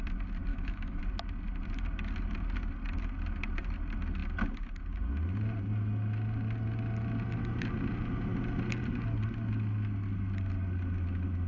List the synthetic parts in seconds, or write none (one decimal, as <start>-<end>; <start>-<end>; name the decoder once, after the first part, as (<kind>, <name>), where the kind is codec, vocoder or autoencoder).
0.5-1.0 (autoencoder, DAC-VAE)